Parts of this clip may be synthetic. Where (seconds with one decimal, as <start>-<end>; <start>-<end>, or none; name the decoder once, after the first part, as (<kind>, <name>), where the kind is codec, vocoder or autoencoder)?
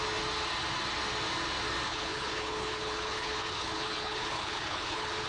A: 1.9-5.3 (codec, HILCodec)